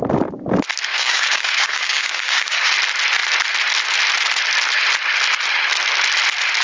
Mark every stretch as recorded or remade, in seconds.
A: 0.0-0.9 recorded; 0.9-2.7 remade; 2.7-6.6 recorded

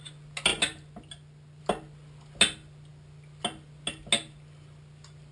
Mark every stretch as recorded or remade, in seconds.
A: 0.0-5.3 recorded

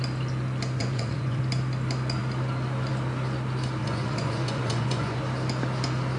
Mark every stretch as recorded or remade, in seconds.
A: 0.0-0.8 recorded; 0.8-1.4 remade; 1.4-3.8 recorded; 3.8-5.2 remade; 5.2-6.2 recorded

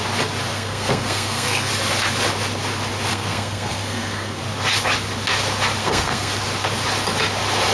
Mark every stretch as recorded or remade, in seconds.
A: 0.0-0.5 recorded; 0.5-1.7 remade; 1.7-3.1 recorded; 3.1-4.4 remade; 4.4-5.8 recorded; 5.8-6.3 remade; 6.3-7.7 recorded

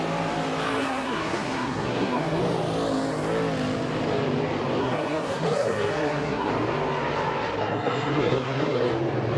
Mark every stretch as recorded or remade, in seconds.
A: 0.0-0.8 recorded; 0.8-2.4 remade; 2.4-4.8 recorded; 4.8-6.5 remade; 6.5-7.6 recorded; 7.6-8.9 remade; 8.9-9.4 recorded

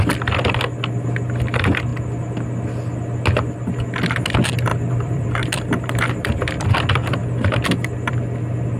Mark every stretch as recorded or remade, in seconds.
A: 0.0-4.7 recorded; 4.7-6.7 remade; 6.7-8.8 recorded

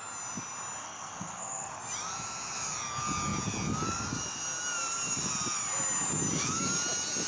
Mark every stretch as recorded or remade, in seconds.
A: 0.0-0.8 recorded; 0.8-1.8 remade; 1.8-7.3 recorded